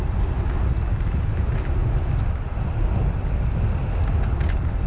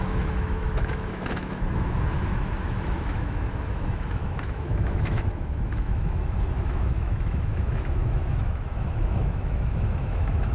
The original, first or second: first